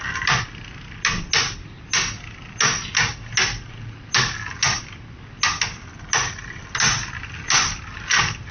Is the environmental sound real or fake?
real